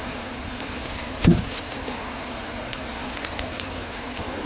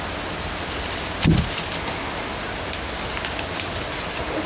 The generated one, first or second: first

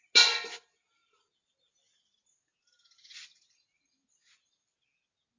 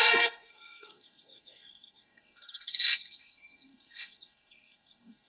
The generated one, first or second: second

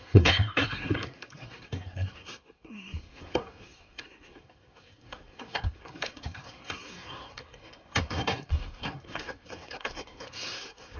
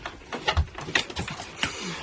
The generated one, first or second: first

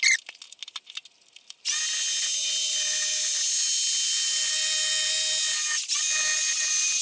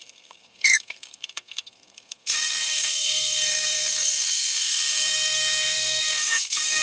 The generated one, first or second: second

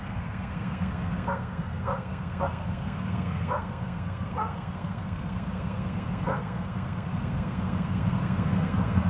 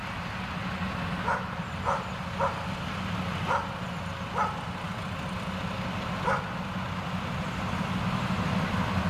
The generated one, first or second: first